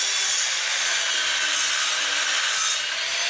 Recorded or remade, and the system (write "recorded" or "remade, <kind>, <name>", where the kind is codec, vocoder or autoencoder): recorded